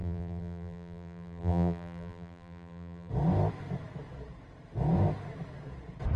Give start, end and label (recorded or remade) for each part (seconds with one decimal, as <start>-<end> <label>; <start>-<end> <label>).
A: 0.0-3.1 remade; 3.1-6.2 recorded